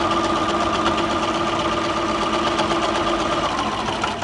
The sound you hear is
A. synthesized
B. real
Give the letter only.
B